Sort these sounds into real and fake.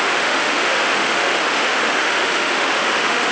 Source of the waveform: fake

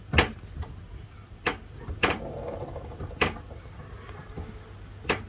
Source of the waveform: fake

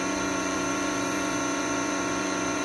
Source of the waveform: fake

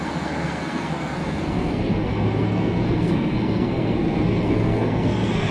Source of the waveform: fake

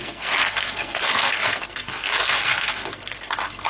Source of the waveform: fake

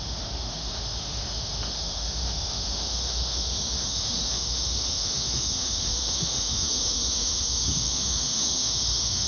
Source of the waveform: fake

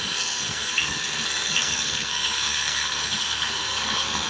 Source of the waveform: fake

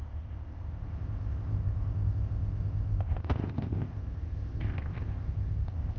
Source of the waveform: fake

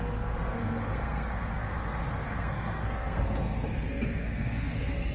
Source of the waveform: fake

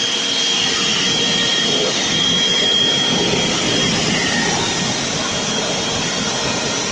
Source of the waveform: fake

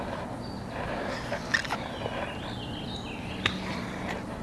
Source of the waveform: real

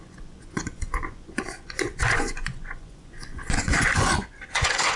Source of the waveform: fake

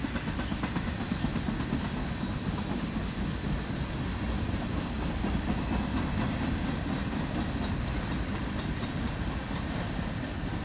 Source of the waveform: real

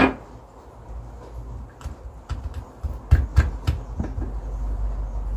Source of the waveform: real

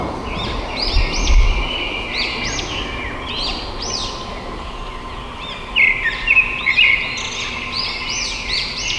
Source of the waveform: real